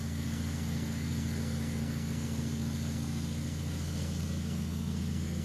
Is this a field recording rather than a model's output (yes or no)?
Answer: no